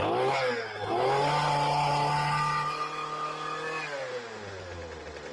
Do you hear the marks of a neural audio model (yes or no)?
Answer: no